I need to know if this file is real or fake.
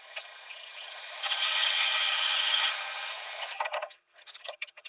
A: fake